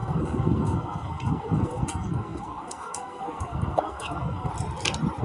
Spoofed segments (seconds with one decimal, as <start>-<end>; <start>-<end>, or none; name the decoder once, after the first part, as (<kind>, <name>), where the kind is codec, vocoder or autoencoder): 0.0-4.5 (codec, SNAC)